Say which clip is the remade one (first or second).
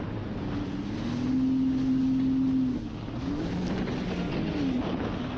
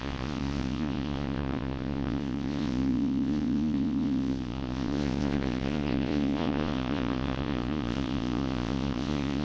second